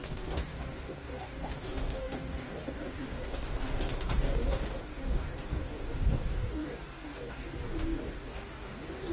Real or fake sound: fake